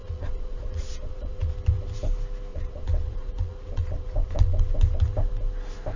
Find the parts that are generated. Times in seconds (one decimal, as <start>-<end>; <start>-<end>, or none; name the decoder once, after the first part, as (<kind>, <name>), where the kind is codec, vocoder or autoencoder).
0.0-1.5 (vocoder, Vocos); 2.5-4.6